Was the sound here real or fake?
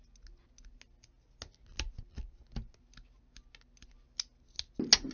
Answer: real